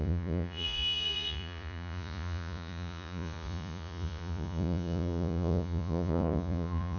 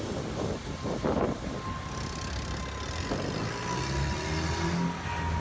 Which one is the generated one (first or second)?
first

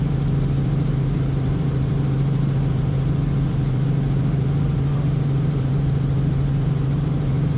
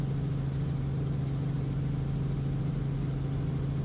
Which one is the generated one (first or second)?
first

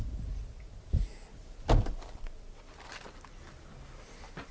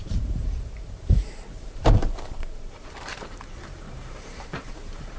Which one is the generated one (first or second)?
second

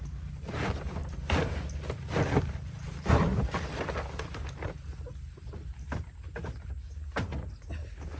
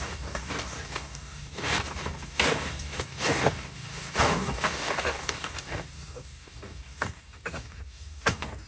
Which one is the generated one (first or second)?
second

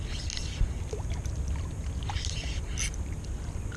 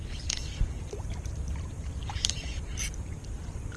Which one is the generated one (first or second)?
second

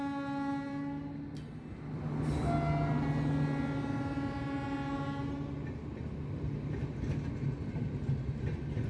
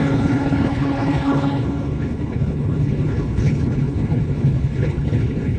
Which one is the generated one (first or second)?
second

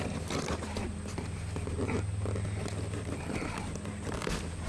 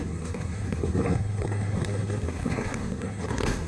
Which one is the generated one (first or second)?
second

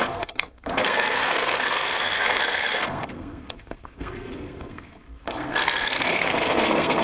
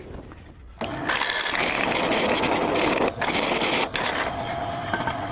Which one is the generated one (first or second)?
first